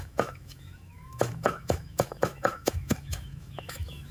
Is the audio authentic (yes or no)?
no